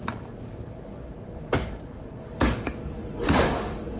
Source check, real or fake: fake